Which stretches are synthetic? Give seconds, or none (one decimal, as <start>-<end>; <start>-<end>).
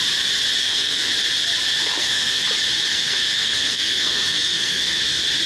0.6-1.1; 1.8-2.4; 2.9-5.0